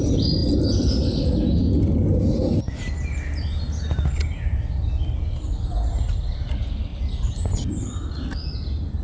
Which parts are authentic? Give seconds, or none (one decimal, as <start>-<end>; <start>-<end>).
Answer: 0.0-9.0